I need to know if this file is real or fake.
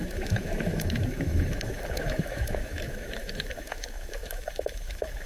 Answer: fake